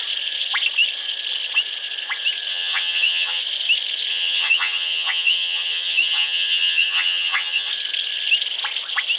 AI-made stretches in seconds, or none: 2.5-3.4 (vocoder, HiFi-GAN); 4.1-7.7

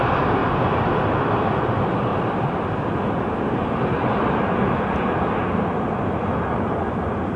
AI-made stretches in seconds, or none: none

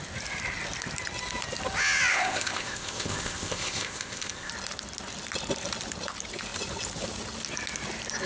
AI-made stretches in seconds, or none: 2.1-4.5 (codec, ZipCodec)

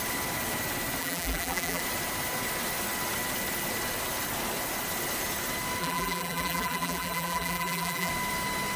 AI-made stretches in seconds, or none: 1.0-1.8 (vocoder, BigVGAN v2); 5.8-8.1

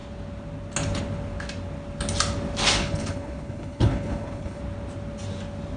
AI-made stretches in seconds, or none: 2.8-4.6 (codec, HILCodec)

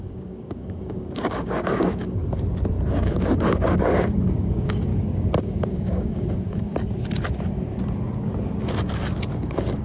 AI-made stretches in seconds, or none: 0.0-2.2 (codec, DAC); 2.9-4.9; 5.4-6.7; 9.3-9.8

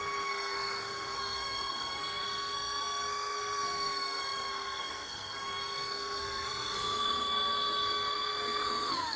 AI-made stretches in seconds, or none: 0.0-9.2 (codec, SNAC)

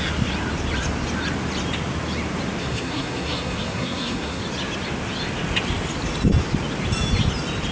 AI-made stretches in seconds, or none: 2.6-4.4 (codec, SNAC)